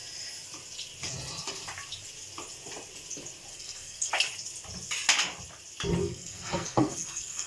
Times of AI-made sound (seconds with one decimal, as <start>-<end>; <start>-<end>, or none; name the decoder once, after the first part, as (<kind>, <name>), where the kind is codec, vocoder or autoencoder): 3.5-4.1 (codec, SNAC); 6.0-7.5